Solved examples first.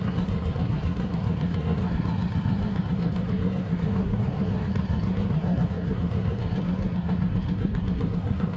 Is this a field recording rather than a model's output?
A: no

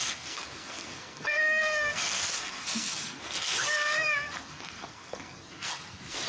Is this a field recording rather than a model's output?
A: no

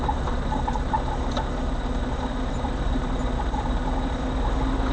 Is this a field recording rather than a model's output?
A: yes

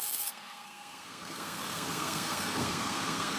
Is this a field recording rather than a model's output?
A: no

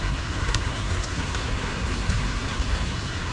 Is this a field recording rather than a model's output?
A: no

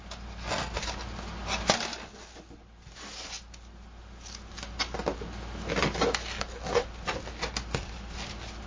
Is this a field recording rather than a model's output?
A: yes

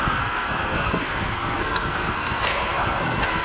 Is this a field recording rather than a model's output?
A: no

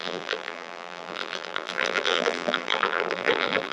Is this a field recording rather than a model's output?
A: no